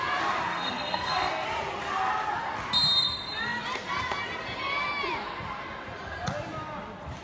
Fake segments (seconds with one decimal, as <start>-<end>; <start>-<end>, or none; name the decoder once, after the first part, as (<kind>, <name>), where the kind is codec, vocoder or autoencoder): 0.5-1.3 (codec, SNAC)

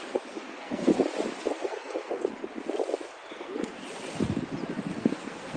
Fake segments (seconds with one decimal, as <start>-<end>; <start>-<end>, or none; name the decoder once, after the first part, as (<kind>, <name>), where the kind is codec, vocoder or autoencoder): 0.0-0.9 (codec, SNAC); 1.5-2.4; 3.3-3.8; 5.0-5.6

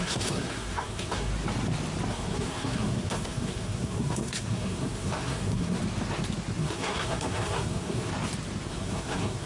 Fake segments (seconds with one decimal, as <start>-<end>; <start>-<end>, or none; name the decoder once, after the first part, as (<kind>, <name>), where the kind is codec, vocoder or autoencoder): 0.0-1.3 (codec, SNAC); 2.1-5.8; 6.6-8.1; 8.7-9.5

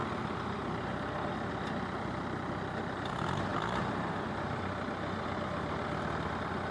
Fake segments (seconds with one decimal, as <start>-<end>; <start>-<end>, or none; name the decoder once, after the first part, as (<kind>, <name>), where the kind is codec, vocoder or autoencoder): none